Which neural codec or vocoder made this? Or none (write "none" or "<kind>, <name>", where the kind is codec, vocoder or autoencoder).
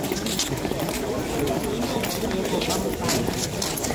none